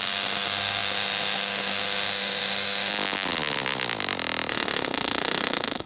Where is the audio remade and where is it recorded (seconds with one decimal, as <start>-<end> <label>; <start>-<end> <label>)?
0.0-2.9 remade; 2.9-4.5 recorded; 4.5-5.9 remade